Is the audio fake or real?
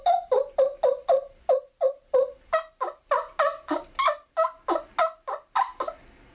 real